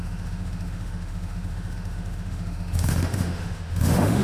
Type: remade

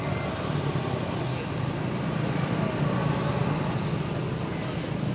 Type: recorded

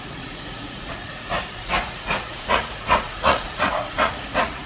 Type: remade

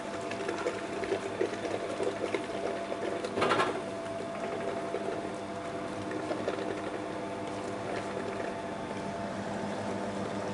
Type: recorded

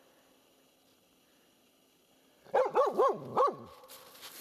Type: recorded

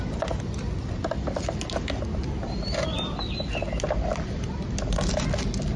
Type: recorded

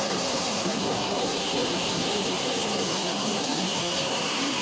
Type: remade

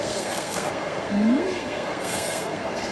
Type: remade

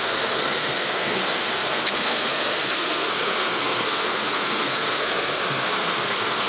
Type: remade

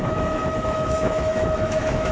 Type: remade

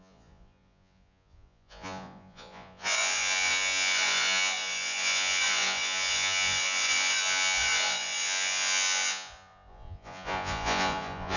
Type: remade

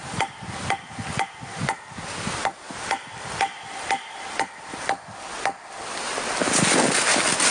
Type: recorded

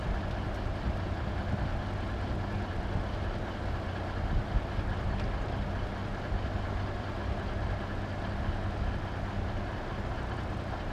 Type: recorded